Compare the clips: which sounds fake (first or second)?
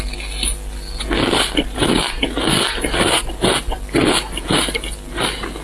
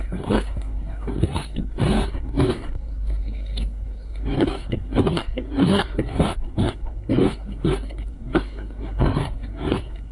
second